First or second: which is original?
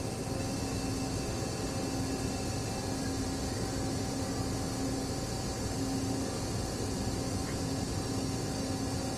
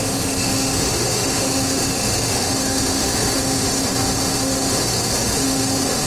first